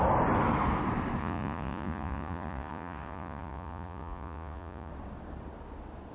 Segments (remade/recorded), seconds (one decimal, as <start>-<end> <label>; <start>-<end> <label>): 0.0-1.2 recorded; 1.2-4.9 remade; 4.9-6.1 recorded